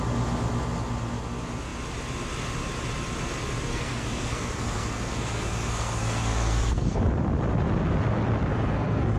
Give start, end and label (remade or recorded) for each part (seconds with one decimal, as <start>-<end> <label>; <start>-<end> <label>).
0.0-3.7 recorded; 3.7-7.0 remade; 7.0-8.5 recorded; 8.5-9.2 remade